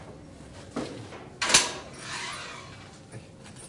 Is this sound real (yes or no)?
yes